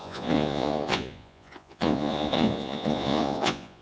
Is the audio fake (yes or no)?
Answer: yes